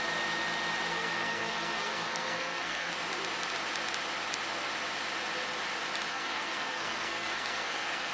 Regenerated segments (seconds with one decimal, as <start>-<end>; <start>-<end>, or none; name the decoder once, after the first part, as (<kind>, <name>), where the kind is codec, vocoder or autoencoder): 0.9-2.9 (codec, SNAC); 6.1-8.1